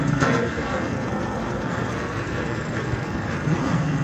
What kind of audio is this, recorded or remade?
remade